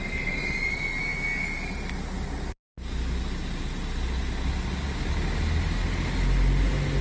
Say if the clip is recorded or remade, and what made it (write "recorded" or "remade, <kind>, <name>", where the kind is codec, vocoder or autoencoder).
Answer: recorded